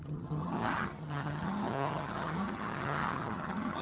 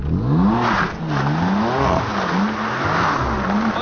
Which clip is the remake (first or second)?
first